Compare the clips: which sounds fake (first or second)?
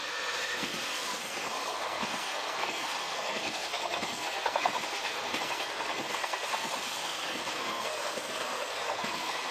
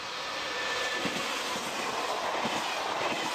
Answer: first